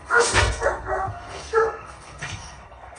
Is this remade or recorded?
remade